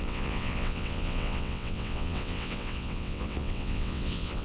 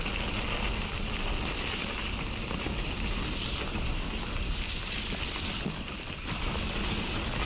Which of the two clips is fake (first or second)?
first